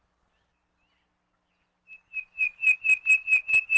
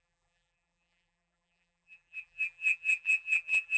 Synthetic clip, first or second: second